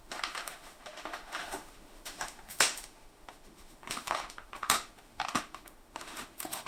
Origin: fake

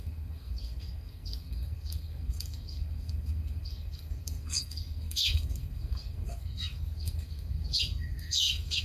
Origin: fake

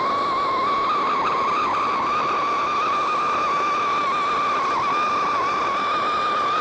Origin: real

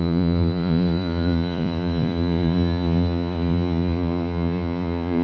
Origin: fake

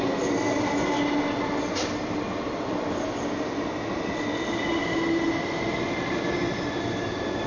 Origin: real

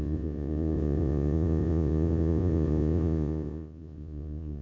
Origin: fake